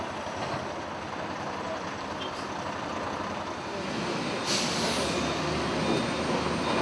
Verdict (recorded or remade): recorded